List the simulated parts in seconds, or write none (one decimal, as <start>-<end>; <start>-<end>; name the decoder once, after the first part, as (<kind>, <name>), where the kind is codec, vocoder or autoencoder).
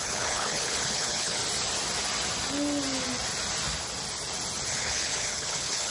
0.0-1.4 (codec, HILCodec); 4.7-5.9